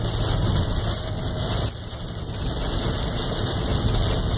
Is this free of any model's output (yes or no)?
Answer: yes